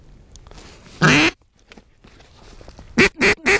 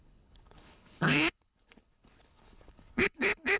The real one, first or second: first